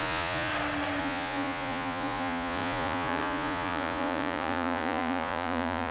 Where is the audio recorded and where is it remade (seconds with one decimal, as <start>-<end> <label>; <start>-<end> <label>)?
0.0-0.5 remade; 0.5-1.0 recorded; 1.0-5.9 remade